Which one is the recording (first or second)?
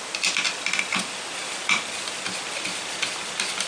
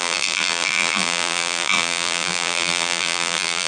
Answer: first